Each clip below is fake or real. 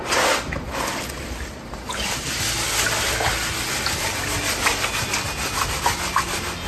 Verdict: real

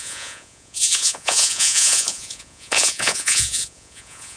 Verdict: fake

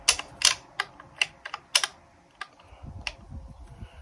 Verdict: real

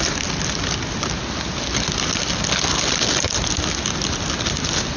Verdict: real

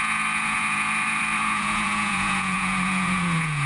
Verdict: fake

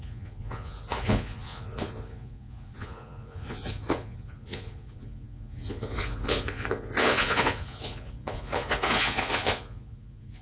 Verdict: fake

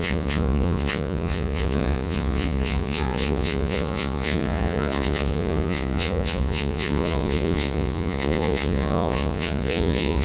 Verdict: fake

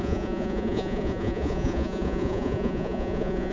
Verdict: fake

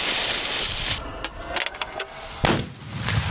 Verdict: real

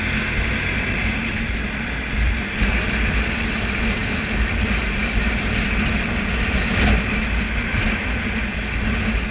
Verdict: real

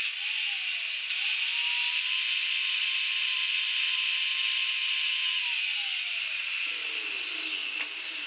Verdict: real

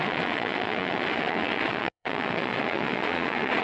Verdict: fake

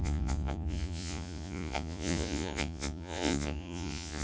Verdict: fake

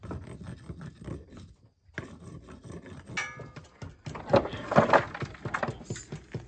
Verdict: real